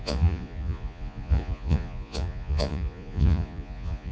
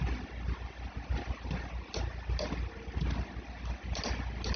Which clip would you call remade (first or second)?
first